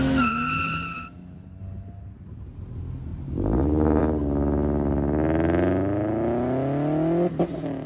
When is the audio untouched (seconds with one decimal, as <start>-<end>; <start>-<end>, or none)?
0.0-3.1; 4.0-7.9